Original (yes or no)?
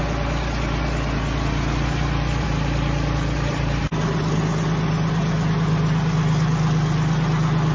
yes